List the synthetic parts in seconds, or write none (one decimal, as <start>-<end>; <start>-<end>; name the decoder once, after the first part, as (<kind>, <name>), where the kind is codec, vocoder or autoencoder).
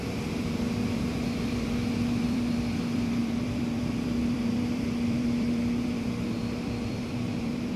0.0-7.8 (vocoder, BigVGAN v2)